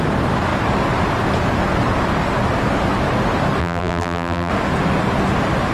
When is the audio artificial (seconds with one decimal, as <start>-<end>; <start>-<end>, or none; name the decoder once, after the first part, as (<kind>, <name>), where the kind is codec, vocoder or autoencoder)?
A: 3.6-4.5 (vocoder, BigVGAN v2)